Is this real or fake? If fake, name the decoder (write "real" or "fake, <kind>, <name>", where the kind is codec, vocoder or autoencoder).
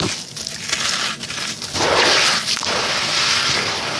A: real